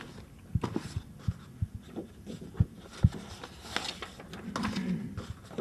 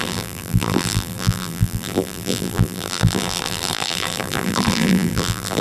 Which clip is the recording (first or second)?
first